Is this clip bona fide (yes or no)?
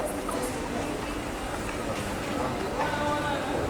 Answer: yes